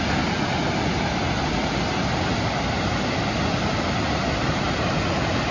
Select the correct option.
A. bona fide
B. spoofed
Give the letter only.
A